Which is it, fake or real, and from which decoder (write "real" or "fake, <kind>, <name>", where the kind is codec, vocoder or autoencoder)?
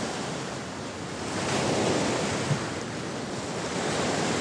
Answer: real